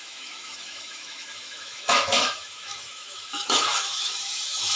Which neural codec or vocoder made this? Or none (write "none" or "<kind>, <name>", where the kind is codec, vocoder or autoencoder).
autoencoder, DAC-VAE